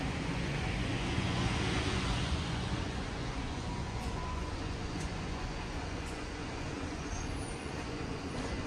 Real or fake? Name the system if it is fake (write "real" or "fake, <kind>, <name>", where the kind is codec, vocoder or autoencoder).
fake, vocoder, Vocos